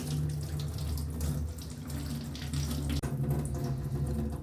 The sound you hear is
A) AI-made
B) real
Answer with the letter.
B